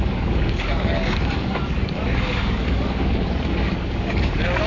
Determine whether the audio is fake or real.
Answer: fake